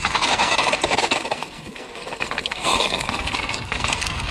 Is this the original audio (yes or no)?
no